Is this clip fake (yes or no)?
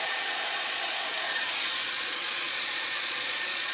yes